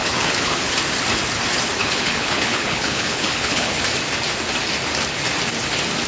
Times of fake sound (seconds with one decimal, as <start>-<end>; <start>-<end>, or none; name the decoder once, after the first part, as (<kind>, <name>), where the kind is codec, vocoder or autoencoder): 0.0-0.7 (codec, HILCodec); 1.8-3.8